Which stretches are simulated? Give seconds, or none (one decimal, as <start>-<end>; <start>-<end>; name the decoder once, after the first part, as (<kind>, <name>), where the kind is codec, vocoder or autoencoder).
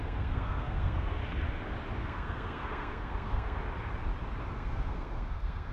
0.0-1.2 (codec, SNAC); 2.0-3.6; 4.5-5.7